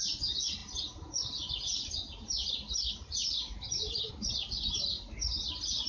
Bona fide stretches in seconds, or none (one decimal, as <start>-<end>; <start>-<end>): 0.0-5.9